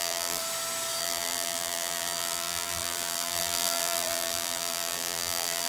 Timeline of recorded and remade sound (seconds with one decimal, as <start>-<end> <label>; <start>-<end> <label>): 0.0-0.4 remade; 0.4-1.0 recorded; 1.0-5.7 remade